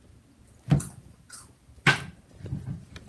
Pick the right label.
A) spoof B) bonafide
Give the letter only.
B